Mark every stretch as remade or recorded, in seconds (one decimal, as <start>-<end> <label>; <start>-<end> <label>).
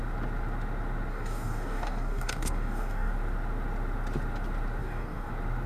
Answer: 0.0-1.1 recorded; 1.1-3.1 remade; 3.1-4.8 recorded; 4.8-5.3 remade; 5.3-5.7 recorded